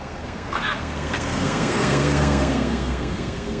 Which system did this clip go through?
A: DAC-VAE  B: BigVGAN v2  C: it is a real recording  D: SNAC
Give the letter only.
D